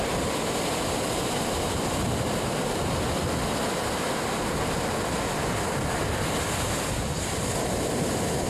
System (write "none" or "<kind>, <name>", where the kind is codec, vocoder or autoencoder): none